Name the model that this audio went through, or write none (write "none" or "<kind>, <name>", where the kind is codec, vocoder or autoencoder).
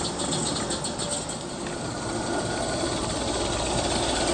none